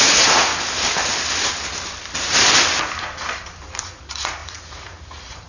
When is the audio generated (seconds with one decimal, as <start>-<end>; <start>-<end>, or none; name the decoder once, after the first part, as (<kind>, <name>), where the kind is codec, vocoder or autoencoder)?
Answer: 0.0-0.5 (vocoder, Vocos); 3.8-5.5